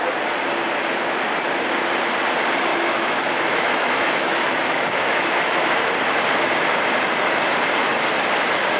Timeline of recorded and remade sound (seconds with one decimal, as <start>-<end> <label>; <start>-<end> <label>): 0.0-2.7 recorded; 2.7-5.9 remade; 5.9-8.8 recorded